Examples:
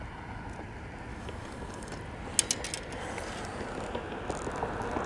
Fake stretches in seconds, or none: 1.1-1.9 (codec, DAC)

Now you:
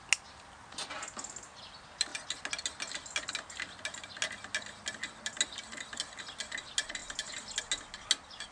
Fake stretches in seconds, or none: none

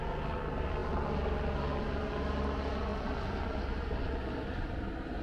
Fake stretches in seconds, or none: none

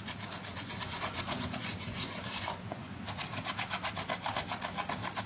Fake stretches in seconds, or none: 0.5-3.1 (vocoder, Vocos)